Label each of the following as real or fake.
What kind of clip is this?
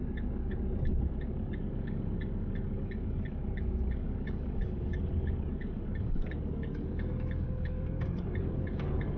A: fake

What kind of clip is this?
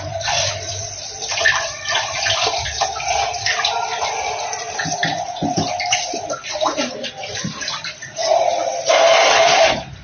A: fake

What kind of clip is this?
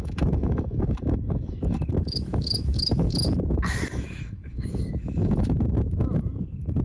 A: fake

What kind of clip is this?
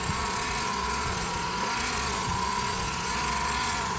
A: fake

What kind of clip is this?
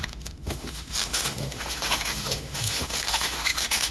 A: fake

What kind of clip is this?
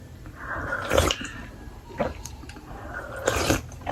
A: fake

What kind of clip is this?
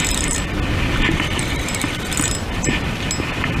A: real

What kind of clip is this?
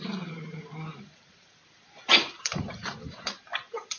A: fake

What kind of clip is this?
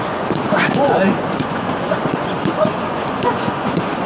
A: fake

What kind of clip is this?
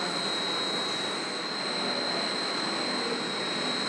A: real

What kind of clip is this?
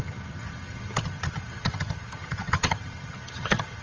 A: fake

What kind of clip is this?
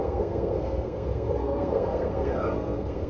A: fake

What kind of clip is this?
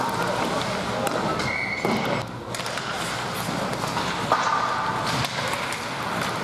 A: real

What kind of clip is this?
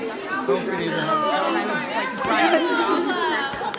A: real